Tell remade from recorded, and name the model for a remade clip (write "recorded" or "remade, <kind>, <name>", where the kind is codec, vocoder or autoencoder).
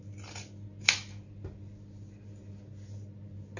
recorded